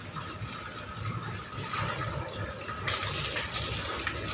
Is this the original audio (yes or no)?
yes